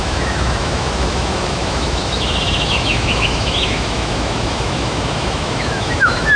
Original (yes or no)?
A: no